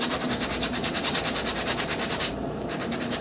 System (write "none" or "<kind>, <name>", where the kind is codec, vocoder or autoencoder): vocoder, BigVGAN v2